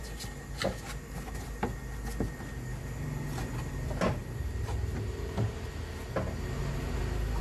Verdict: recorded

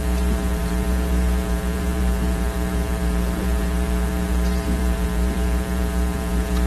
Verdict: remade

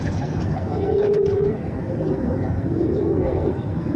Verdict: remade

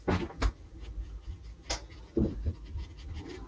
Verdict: recorded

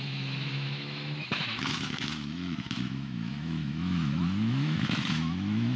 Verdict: remade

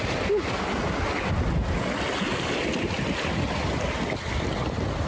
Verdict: recorded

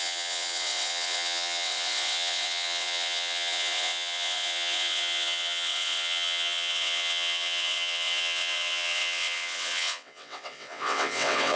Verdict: remade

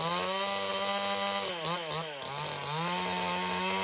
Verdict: recorded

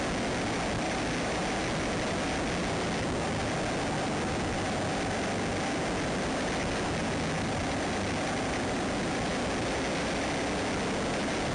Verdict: recorded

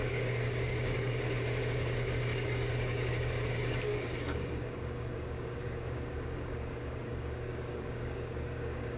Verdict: remade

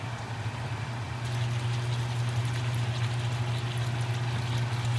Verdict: recorded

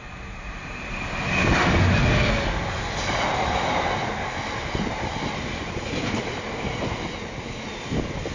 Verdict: recorded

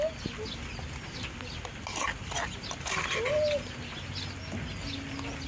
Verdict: recorded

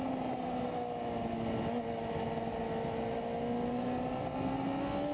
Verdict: recorded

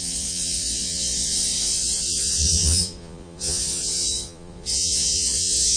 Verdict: remade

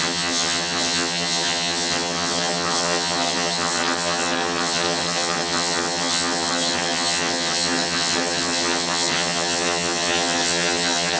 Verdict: remade